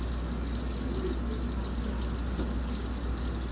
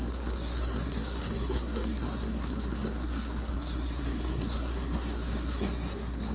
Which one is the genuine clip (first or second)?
first